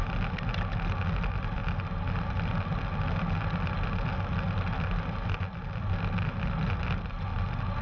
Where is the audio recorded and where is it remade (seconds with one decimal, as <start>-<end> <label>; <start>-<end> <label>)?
0.0-7.8 recorded